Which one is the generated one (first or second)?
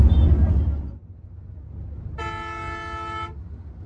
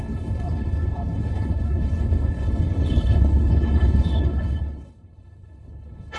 second